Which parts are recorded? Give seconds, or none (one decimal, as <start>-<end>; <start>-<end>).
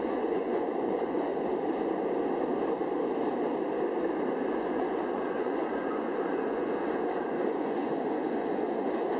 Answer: 1.3-4.5